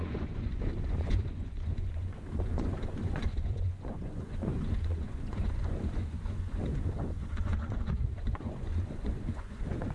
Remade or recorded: remade